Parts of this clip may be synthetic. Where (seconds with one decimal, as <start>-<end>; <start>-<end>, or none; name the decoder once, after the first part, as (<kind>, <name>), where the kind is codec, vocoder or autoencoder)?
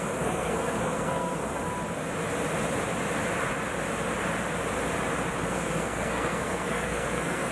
0.0-1.4 (codec, SNAC); 5.5-7.5